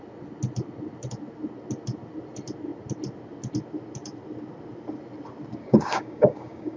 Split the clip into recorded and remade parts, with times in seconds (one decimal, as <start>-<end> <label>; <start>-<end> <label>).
0.0-5.6 recorded; 5.6-6.8 remade